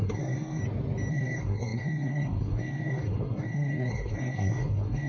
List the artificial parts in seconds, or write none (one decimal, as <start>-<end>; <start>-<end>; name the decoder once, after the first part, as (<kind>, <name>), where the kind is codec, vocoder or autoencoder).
0.0-0.6 (codec, SNAC); 1.1-5.1